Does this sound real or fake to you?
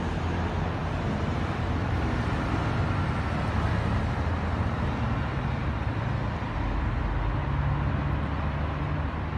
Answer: real